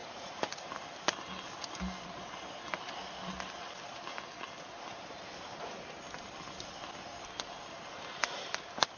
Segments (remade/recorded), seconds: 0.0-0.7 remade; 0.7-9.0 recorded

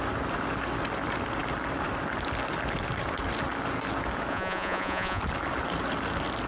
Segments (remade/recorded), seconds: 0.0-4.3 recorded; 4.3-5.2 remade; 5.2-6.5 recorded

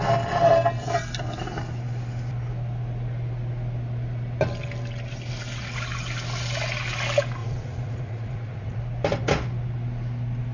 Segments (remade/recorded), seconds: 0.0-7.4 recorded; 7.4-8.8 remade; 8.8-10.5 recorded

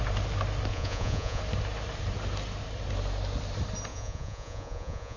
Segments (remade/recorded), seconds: 0.0-0.7 recorded; 0.7-1.4 remade; 1.4-3.9 recorded; 3.9-5.2 remade